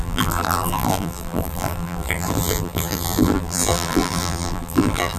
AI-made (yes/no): yes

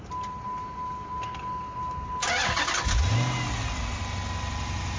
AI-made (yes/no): no